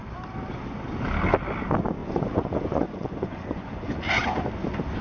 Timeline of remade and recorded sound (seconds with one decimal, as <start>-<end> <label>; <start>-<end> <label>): 0.0-2.0 recorded; 2.0-4.3 remade; 4.3-5.0 recorded